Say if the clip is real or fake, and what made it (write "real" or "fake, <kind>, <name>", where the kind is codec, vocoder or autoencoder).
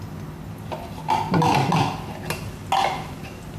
real